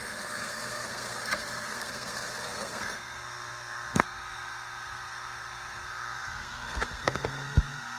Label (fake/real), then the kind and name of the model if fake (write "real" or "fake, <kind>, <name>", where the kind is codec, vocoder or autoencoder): fake, codec, SNAC